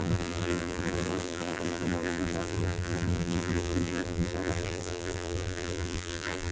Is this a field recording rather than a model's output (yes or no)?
no